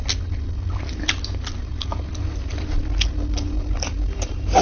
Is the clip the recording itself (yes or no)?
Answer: yes